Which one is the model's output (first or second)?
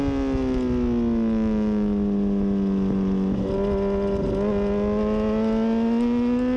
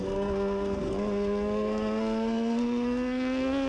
second